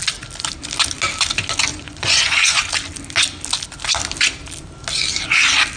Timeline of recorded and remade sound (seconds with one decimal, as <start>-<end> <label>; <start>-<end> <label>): 0.0-1.7 recorded; 1.7-2.7 remade; 2.7-5.8 recorded